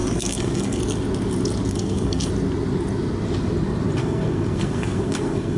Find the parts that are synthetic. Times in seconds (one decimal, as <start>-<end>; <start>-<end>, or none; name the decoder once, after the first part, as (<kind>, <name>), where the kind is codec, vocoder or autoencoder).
0.0-0.8 (codec, SNAC); 1.7-2.3; 4.0-5.6